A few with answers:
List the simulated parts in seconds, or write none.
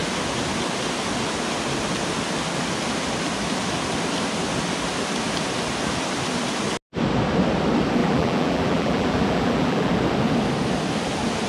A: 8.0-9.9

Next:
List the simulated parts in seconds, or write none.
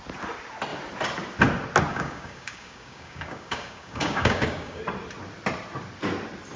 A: 1.9-4.8